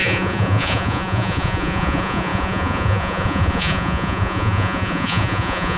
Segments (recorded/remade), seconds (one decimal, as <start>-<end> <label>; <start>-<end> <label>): 0.0-5.8 remade